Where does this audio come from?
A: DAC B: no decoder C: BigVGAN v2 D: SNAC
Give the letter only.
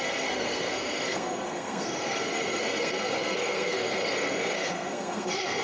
D